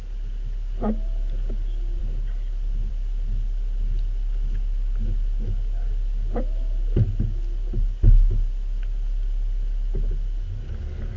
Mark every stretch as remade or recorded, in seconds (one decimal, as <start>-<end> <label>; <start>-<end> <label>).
0.0-11.2 recorded